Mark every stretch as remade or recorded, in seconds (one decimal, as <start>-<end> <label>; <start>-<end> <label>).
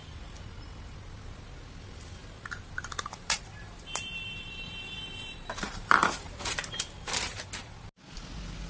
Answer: 0.0-2.2 recorded; 2.2-7.4 remade; 7.4-8.7 recorded